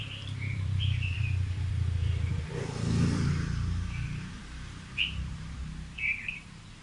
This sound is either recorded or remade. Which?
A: remade